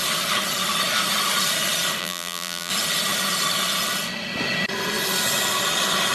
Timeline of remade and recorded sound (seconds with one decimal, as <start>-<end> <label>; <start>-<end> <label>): 0.0-2.0 recorded; 2.0-2.7 remade; 2.7-6.1 recorded